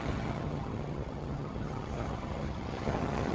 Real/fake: fake